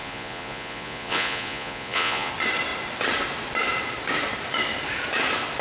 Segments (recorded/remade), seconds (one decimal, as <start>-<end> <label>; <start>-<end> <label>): 0.0-2.3 remade; 2.3-5.6 recorded